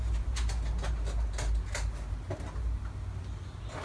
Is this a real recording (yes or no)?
yes